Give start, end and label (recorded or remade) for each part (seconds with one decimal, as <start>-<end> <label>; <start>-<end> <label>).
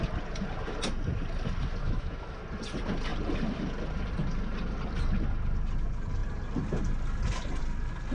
0.0-1.8 recorded; 1.8-2.4 remade; 2.4-8.1 recorded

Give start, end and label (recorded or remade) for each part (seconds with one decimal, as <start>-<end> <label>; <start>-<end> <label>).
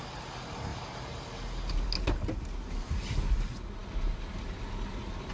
0.0-5.3 recorded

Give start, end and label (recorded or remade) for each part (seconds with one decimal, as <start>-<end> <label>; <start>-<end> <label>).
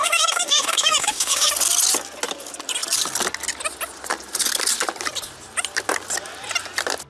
0.0-1.5 remade; 1.5-7.1 recorded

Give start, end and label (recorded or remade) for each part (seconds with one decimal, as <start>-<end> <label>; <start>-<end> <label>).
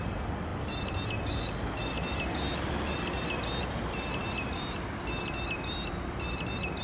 0.0-6.8 recorded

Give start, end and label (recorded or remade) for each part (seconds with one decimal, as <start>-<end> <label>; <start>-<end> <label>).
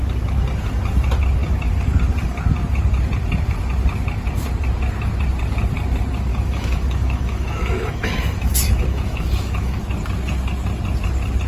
0.0-6.3 recorded; 6.3-9.8 remade; 9.8-11.5 recorded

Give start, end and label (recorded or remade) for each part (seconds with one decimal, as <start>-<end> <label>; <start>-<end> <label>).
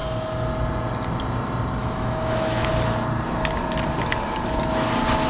0.0-1.8 recorded; 1.8-2.7 remade; 2.7-5.3 recorded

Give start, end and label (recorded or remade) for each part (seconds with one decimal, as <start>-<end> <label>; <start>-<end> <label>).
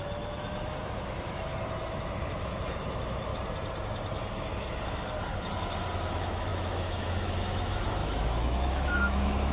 0.0-3.3 remade; 3.3-6.0 recorded; 6.0-9.5 remade